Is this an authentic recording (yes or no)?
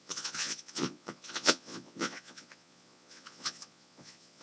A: no